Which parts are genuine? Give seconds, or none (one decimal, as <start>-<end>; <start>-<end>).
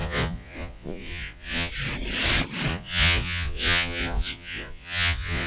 1.7-2.7